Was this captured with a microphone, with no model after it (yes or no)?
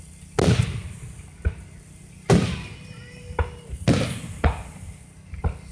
yes